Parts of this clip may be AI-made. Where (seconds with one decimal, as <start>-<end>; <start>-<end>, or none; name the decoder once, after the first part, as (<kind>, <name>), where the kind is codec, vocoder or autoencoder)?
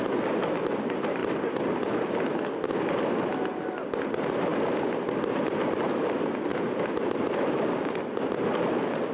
none